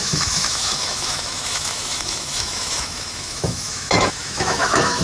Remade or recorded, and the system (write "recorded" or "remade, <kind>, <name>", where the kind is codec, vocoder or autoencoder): remade, autoencoder, DAC-VAE